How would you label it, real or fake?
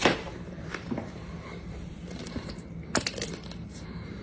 fake